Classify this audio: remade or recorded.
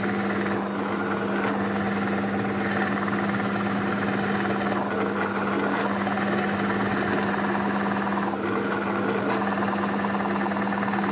recorded